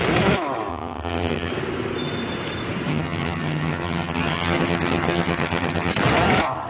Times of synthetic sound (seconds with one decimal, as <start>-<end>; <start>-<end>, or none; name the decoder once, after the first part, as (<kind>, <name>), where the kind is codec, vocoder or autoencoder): 0.7-1.5 (vocoder, HiFi-GAN); 2.9-5.9

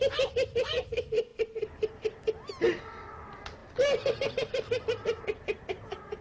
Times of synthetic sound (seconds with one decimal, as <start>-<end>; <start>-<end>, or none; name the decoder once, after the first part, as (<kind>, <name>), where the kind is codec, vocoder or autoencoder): none

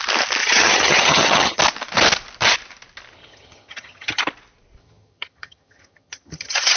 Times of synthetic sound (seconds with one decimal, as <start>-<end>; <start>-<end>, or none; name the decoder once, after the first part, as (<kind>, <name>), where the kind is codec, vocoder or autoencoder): 0.4-1.6 (vocoder, HiFi-GAN); 3.2-4.2; 4.8-6.8

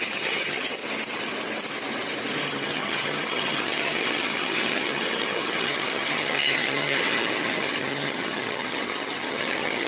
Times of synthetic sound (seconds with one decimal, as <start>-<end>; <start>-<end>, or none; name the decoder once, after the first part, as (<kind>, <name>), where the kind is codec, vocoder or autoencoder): 0.0-0.8 (vocoder, HiFi-GAN); 2.5-9.9